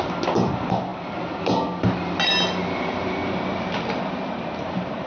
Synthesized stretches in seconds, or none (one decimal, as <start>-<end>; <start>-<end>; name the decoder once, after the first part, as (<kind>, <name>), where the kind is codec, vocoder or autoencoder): none